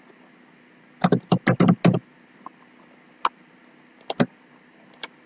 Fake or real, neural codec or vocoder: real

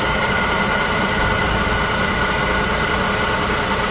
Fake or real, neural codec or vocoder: real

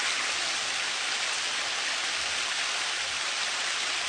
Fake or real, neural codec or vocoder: real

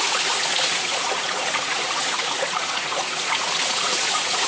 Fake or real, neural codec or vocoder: fake, vocoder, Vocos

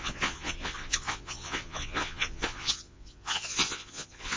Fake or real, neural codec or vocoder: fake, vocoder, Vocos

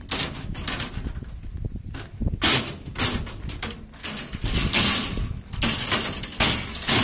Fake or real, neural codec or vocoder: real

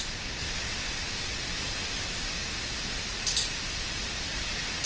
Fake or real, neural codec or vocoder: real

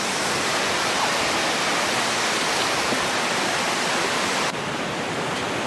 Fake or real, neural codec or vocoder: fake, vocoder, BigVGAN v2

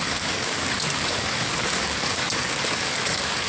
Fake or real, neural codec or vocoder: fake, codec, DAC